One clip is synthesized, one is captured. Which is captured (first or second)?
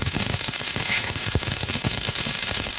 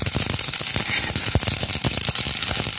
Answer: second